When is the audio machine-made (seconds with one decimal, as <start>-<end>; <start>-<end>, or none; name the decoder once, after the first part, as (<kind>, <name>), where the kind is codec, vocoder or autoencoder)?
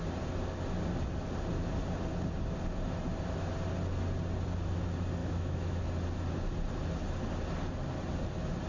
5.2-5.8 (autoencoder, DAC-VAE)